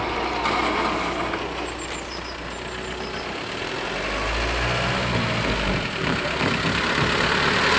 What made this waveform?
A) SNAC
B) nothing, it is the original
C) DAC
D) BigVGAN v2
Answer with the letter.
B